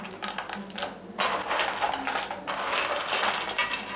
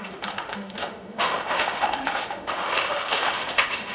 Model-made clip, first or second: second